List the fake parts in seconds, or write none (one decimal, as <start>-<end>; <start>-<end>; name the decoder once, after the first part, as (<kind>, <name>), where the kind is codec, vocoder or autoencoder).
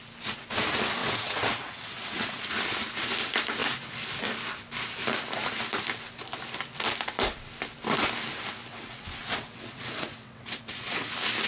1.0-2.5 (vocoder, WaveNeXt); 8.7-11.1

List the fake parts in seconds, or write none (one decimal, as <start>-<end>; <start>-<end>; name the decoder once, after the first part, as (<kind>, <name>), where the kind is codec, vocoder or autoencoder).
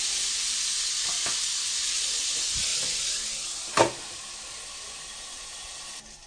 none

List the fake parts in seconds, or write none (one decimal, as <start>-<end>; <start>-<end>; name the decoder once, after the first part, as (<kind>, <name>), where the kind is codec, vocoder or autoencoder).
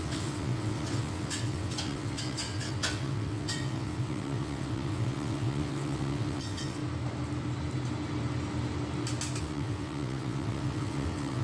0.0-6.8 (vocoder, WaveNeXt); 9.4-11.4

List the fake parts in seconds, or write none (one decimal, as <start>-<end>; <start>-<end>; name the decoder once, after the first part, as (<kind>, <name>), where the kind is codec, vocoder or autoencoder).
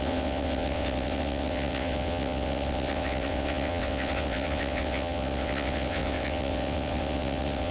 0.0-7.7 (vocoder, WaveNeXt)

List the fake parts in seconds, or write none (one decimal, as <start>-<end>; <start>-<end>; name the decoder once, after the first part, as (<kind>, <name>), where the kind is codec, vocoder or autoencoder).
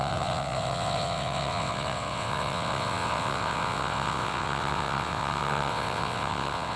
0.0-6.8 (vocoder, WaveNeXt)